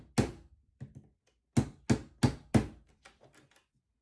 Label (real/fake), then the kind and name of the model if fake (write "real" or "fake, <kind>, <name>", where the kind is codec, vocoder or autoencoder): real